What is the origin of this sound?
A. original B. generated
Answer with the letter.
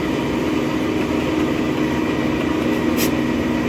A